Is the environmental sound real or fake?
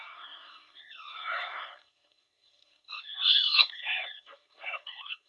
fake